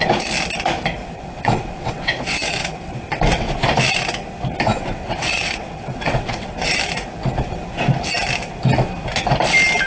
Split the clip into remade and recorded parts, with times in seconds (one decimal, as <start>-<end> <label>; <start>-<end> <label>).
0.0-1.0 recorded; 1.0-3.5 remade; 3.5-4.7 recorded; 4.7-6.7 remade; 6.7-9.9 recorded

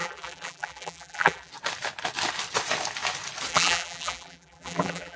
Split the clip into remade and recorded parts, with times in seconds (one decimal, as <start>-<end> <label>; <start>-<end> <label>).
0.0-1.5 remade; 1.5-3.5 recorded; 3.5-5.2 remade

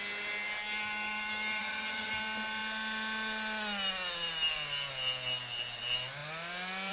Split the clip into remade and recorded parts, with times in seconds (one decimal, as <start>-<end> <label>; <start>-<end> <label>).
0.0-1.6 recorded; 1.6-2.1 remade; 2.1-6.9 recorded

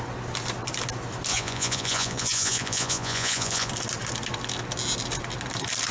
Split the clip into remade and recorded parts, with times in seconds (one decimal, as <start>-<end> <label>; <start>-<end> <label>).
0.0-1.3 recorded; 1.3-3.7 remade; 3.7-5.9 recorded